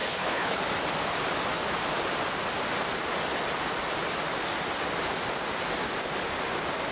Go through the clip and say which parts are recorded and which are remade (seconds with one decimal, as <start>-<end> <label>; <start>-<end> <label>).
0.0-0.6 remade; 0.6-6.9 recorded